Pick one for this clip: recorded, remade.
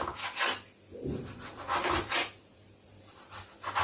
recorded